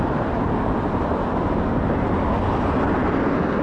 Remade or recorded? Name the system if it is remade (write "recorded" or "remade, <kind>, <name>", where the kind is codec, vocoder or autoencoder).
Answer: recorded